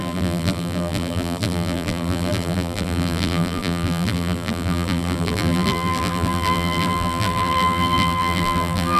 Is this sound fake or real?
fake